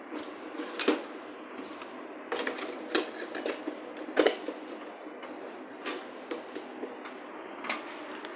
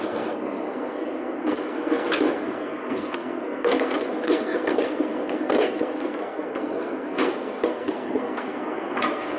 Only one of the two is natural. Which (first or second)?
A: first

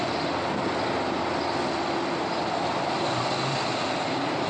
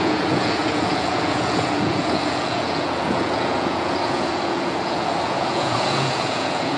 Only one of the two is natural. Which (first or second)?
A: first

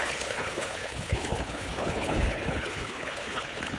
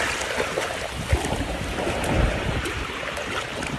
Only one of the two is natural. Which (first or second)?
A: second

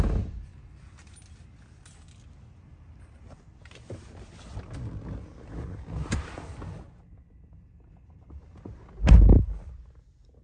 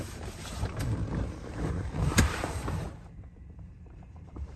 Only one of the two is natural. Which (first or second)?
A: first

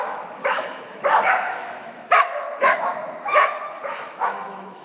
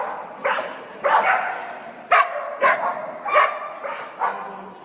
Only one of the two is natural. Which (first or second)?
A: second